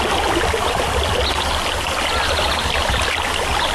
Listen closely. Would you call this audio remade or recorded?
recorded